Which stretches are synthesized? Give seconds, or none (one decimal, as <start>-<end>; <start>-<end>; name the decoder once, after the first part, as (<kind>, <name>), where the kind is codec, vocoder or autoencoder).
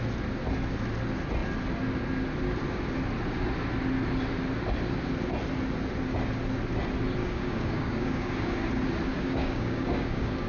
7.2-8.7 (codec, DAC); 9.1-10.5